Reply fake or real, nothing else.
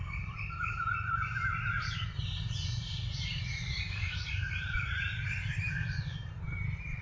fake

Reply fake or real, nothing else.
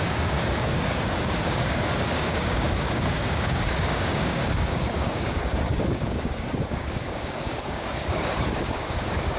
fake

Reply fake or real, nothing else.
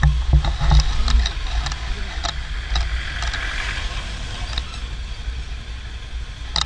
real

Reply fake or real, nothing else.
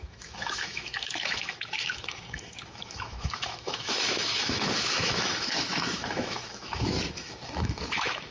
fake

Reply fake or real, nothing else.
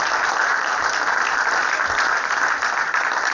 real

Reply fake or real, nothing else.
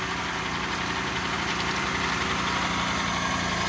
real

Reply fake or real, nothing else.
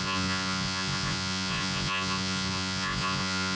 fake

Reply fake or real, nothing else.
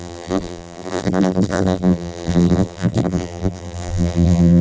fake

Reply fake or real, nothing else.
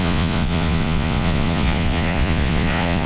fake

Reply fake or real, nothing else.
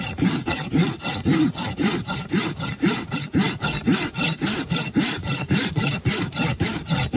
fake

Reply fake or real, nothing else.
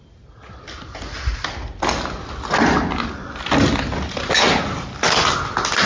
real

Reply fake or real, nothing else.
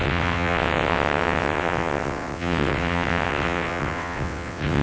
fake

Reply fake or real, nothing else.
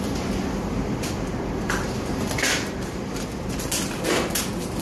real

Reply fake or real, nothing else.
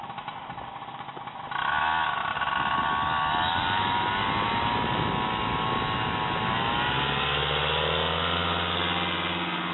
real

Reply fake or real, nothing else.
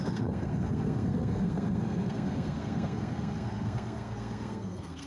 fake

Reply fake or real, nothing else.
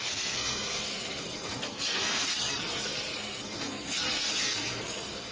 fake